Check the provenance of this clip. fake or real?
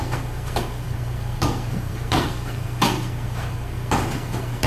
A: fake